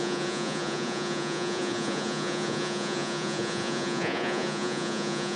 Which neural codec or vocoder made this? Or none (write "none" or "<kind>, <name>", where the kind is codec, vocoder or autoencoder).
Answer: vocoder, Vocos